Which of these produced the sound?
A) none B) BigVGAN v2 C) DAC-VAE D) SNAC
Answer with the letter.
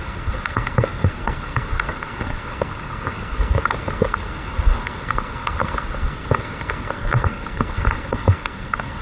D